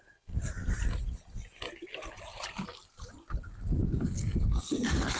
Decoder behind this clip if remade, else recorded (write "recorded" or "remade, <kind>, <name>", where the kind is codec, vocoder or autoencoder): recorded